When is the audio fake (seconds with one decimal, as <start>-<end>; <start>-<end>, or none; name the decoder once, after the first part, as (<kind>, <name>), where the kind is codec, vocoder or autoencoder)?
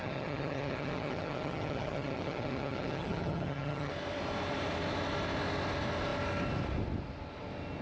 0.0-3.9 (vocoder, HiFi-GAN)